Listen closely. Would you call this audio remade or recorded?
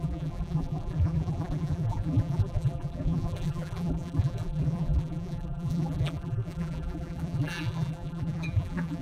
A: remade